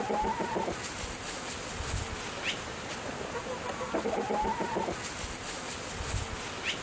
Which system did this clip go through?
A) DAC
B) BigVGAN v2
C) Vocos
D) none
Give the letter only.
D